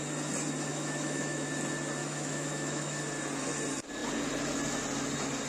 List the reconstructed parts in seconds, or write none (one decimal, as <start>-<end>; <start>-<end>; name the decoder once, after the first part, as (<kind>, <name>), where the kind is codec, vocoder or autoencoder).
0.7-1.5 (autoencoder, DAC-VAE); 2.0-3.0